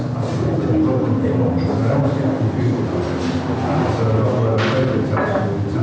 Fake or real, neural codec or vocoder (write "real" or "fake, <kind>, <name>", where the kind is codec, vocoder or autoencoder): real